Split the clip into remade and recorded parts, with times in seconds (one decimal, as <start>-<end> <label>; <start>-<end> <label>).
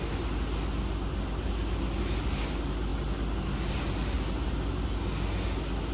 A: 0.0-5.9 recorded